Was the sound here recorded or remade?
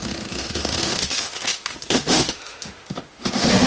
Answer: remade